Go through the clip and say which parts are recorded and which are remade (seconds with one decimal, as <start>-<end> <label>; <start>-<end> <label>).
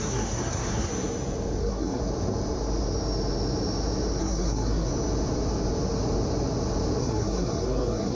0.0-0.9 remade; 0.9-1.6 recorded; 1.6-2.0 remade; 2.0-4.2 recorded; 4.2-4.9 remade; 4.9-7.0 recorded; 7.0-8.1 remade